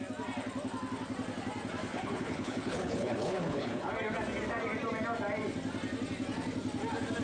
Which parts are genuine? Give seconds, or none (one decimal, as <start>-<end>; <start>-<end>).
0.0-1.9; 3.9-7.2